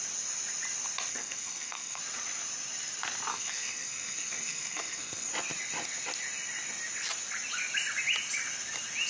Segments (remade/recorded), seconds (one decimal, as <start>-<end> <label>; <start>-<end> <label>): 0.0-1.1 recorded; 1.1-2.0 remade; 2.0-3.3 recorded; 3.3-5.3 remade; 5.3-9.1 recorded